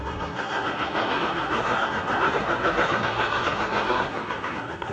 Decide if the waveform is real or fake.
fake